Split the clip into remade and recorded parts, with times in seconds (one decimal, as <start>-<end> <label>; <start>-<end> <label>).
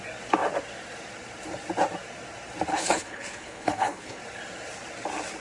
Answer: 0.0-2.7 recorded; 2.7-4.2 remade; 4.2-5.4 recorded